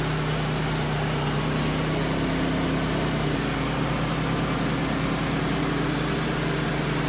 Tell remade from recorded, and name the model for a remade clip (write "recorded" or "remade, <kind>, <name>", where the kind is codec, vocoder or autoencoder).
recorded